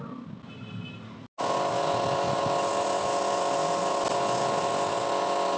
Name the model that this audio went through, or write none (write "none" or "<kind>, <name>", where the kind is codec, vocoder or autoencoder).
none